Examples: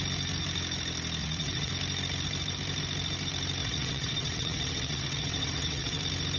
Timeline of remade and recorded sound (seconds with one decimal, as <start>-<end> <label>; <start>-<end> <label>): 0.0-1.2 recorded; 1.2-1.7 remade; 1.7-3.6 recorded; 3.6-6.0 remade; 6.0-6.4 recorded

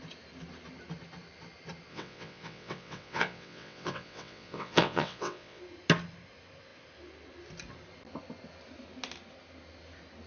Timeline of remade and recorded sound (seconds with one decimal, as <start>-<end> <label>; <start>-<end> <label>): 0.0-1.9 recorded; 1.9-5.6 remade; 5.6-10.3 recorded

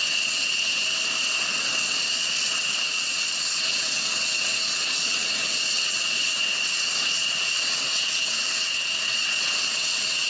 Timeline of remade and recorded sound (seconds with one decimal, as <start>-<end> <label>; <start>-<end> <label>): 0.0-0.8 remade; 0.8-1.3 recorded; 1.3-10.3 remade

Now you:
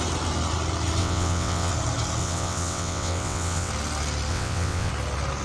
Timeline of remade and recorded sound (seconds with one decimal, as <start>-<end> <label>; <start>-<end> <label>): 0.0-1.0 recorded; 1.0-1.7 remade; 1.7-2.2 recorded; 2.2-3.7 remade; 3.7-4.3 recorded; 4.3-4.9 remade; 4.9-5.4 recorded